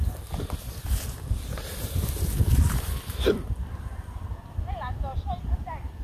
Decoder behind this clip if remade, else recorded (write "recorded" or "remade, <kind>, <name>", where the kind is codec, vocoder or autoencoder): recorded